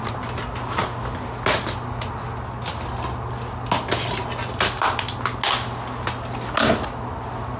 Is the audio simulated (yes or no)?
no